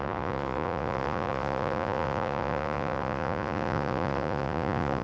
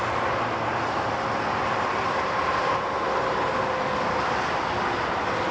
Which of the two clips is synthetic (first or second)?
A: first